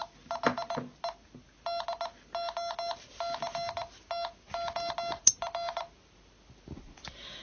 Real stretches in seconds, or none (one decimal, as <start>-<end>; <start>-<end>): 0.0-7.4